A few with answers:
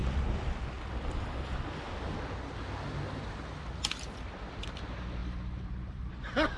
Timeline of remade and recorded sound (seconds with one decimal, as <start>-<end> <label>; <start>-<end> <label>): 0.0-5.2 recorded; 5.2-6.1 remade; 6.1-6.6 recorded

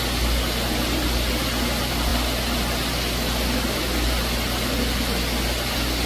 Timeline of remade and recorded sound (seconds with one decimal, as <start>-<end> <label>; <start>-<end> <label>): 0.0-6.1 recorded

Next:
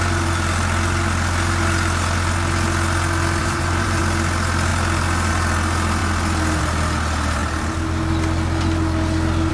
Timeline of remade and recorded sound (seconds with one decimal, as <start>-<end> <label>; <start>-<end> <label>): 0.0-3.4 recorded; 3.4-4.0 remade; 4.0-9.5 recorded

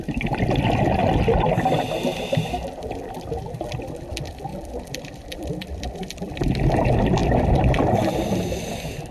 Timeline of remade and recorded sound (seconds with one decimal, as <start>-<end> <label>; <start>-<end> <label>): 0.0-4.5 recorded; 4.5-6.4 remade; 6.4-9.1 recorded